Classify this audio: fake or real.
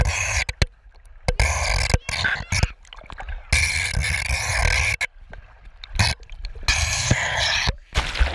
real